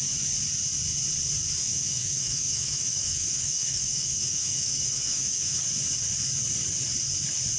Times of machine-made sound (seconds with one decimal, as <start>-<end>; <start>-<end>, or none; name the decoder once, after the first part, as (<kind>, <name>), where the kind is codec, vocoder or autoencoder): 1.6-5.6 (autoencoder, DAC-VAE)